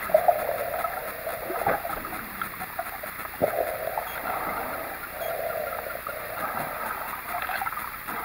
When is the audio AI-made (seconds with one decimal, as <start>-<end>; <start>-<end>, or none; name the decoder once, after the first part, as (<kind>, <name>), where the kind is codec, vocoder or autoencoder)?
none